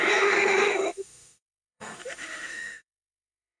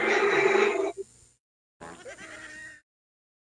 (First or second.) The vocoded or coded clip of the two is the first